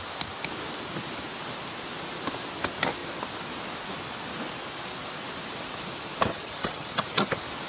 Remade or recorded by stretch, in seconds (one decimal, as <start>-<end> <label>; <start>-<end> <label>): 0.0-6.3 recorded; 6.3-7.3 remade; 7.3-7.7 recorded